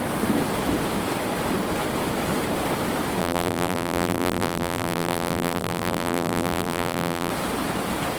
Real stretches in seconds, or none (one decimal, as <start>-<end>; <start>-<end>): 0.0-3.2; 7.3-8.2